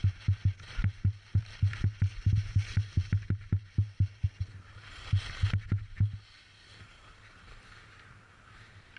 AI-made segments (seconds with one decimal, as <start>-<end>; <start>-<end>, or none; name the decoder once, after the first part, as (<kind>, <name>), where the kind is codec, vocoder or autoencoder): none